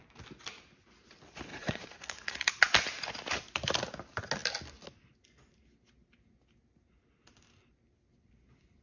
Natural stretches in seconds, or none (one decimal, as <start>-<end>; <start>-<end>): 0.0-1.5; 2.5-8.8